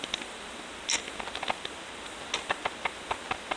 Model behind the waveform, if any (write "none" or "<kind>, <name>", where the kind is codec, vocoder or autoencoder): none